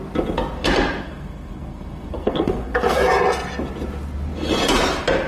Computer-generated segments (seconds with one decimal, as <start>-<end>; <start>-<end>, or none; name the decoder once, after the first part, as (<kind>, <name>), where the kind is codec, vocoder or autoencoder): 1.0-3.0 (codec, SNAC)